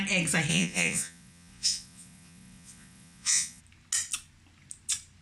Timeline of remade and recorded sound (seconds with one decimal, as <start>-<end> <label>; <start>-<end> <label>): 0.0-0.5 recorded; 0.5-3.6 remade; 3.6-5.2 recorded